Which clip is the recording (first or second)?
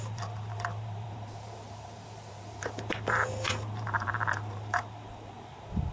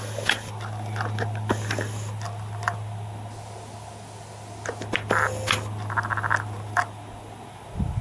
second